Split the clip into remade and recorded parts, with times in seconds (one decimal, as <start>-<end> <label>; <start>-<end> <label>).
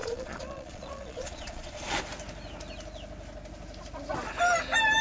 0.0-2.0 remade; 2.0-5.0 recorded